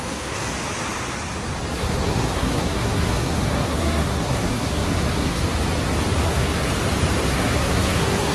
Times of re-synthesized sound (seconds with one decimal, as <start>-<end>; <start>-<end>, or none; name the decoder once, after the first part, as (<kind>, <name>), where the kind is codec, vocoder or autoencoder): 0.0-0.5 (codec, SNAC); 1.7-5.4; 6.2-6.7; 7.3-8.3